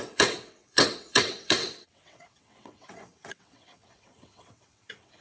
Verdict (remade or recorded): remade